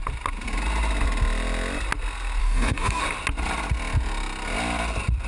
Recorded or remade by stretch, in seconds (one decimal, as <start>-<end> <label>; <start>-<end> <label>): 0.0-2.4 recorded; 2.4-3.0 remade; 3.0-5.3 recorded